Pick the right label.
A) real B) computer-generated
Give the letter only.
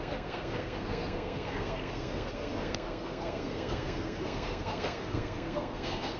B